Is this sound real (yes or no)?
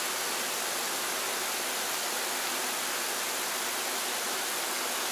yes